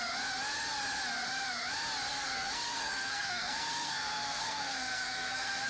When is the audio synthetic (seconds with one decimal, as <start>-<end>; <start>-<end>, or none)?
2.1-5.7